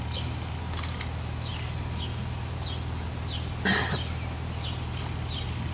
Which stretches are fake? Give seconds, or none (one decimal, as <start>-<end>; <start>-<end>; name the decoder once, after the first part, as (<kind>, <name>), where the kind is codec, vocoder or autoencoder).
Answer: none